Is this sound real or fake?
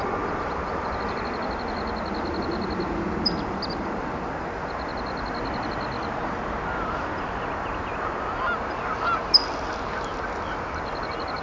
real